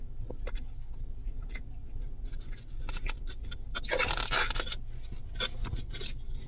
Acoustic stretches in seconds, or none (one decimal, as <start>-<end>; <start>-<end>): 0.0-2.3; 3.5-6.5